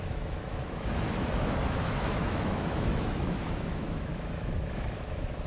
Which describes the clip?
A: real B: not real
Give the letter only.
B